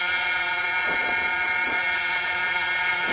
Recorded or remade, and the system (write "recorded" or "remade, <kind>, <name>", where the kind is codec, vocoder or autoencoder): remade, vocoder, Vocos